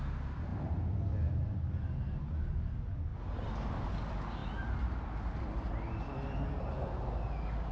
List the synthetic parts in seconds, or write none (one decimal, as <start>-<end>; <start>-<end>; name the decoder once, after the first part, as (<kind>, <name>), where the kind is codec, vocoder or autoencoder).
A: none